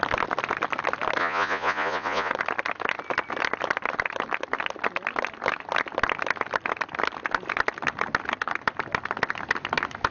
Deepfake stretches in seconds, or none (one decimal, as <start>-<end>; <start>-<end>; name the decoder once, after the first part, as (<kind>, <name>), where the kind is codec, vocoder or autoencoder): 1.2-2.3 (vocoder, Vocos)